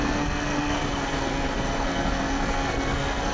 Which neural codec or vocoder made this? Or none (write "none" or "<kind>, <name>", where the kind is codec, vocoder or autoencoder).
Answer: codec, SNAC